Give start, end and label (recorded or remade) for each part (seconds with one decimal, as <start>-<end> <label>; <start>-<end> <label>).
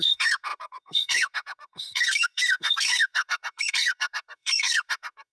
0.0-5.3 remade